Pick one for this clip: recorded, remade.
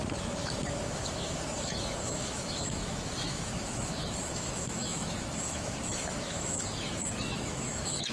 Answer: remade